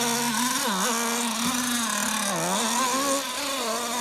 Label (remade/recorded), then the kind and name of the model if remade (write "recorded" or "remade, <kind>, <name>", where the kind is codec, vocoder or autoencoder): recorded